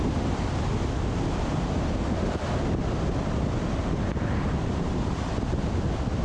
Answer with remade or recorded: recorded